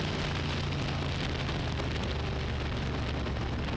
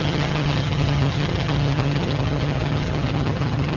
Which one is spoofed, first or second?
second